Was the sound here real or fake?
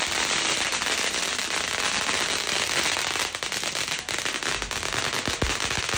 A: real